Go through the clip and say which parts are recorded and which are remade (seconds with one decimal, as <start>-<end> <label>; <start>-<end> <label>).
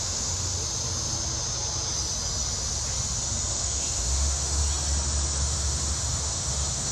0.0-0.6 remade; 0.6-3.5 recorded; 3.5-4.6 remade; 4.6-5.4 recorded; 5.4-6.9 remade